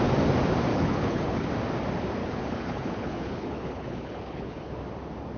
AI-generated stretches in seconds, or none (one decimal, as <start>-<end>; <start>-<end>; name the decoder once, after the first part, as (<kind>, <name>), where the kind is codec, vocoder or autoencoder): 0.7-1.5 (codec, HILCodec); 2.2-4.7